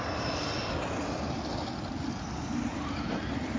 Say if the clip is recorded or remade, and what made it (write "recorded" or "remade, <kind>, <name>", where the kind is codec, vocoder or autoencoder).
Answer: recorded